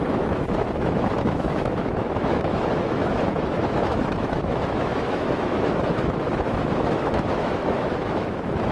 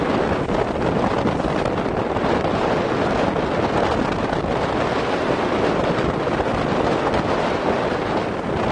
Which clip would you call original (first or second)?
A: second